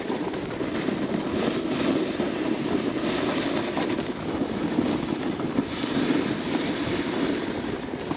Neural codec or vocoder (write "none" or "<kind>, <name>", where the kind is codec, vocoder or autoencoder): none